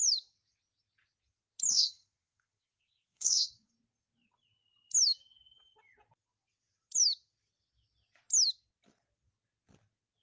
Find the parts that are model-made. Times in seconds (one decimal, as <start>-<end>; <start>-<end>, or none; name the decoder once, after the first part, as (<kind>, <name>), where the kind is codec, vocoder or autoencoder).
1.7-3.7 (codec, SNAC)